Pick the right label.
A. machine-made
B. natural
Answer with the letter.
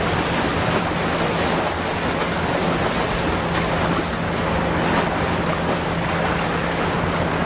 B